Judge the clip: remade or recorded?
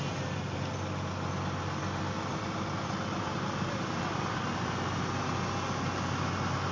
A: recorded